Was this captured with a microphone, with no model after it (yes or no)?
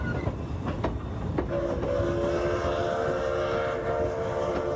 yes